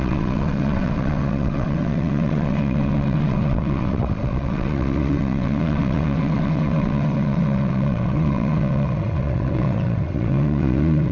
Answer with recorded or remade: remade